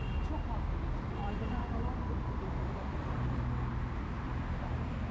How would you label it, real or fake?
real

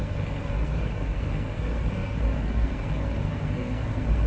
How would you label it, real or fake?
fake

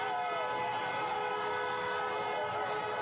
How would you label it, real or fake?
real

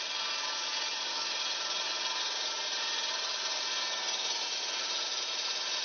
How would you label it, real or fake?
real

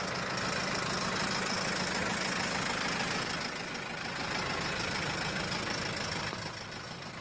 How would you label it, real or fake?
real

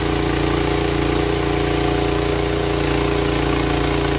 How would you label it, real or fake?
real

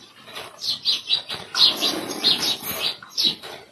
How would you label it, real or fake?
real